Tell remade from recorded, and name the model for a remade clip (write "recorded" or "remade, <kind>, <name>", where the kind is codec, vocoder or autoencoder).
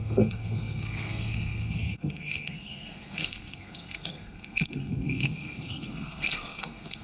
remade, codec, SNAC